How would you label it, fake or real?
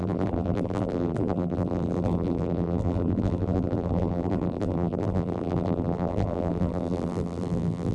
fake